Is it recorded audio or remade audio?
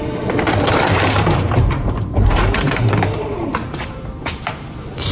remade